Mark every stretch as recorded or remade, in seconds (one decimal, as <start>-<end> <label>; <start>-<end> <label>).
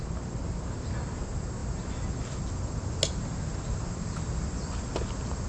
0.0-5.5 recorded